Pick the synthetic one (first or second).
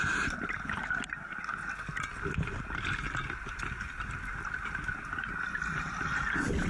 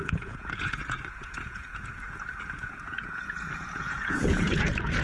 second